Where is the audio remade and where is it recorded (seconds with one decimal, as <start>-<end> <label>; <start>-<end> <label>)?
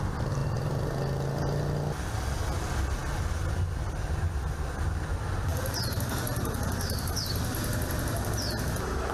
0.0-9.1 recorded